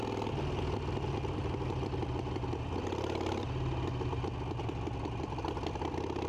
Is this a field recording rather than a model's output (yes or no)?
yes